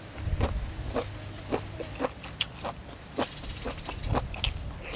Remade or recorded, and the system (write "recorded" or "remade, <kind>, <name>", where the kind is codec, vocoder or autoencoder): recorded